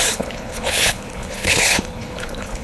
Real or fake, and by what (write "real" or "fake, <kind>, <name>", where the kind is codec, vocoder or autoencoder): fake, codec, HILCodec